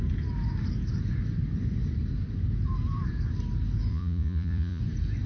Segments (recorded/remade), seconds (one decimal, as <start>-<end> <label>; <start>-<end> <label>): 0.0-3.9 recorded; 3.9-4.8 remade; 4.8-5.3 recorded